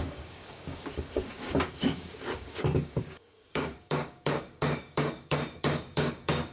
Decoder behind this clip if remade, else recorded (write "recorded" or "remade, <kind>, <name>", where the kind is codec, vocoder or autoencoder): remade, codec, DAC